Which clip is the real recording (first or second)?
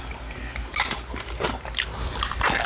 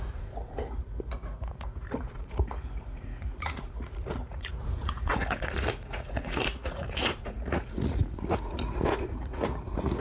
first